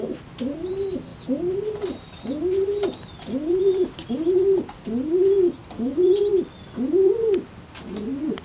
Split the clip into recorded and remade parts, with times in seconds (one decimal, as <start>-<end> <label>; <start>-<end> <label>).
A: 0.0-1.1 recorded; 1.1-4.1 remade; 4.1-5.6 recorded; 5.6-6.3 remade; 6.3-8.4 recorded